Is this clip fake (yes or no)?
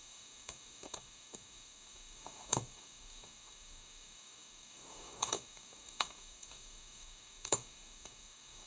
yes